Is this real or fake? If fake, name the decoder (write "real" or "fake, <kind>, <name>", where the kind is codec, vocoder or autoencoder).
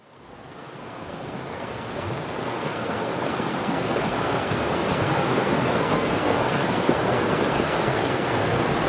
fake, codec, SNAC